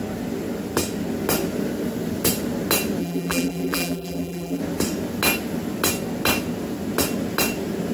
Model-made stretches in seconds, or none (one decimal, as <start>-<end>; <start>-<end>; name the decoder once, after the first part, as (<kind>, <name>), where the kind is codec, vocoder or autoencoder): 3.0-4.6 (vocoder, BigVGAN v2)